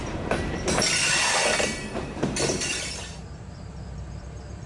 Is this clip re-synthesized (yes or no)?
yes